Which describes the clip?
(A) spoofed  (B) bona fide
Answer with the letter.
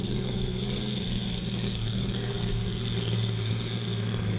A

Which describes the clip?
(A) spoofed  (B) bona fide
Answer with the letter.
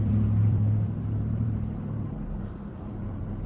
A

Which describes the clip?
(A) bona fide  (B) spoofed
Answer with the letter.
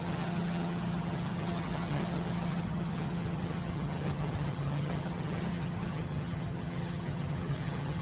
B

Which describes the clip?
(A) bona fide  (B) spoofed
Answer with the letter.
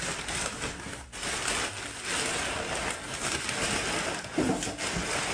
A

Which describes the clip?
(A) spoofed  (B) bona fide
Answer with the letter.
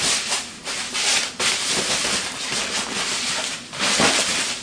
B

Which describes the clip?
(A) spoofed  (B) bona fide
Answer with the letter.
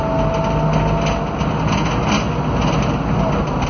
B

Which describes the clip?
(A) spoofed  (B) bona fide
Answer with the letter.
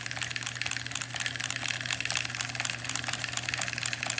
B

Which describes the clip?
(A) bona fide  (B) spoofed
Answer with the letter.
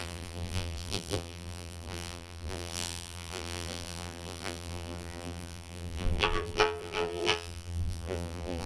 B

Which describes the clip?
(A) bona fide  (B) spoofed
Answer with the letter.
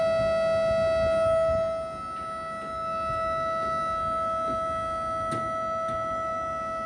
A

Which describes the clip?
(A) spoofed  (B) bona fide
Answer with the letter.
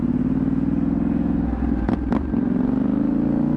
B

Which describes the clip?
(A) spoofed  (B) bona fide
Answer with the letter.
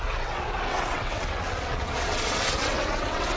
A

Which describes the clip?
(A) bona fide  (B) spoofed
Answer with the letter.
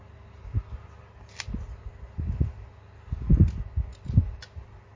A